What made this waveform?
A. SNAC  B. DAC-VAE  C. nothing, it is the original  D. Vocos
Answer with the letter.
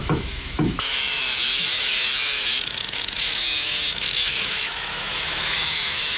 B